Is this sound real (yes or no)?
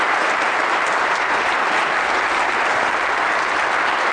yes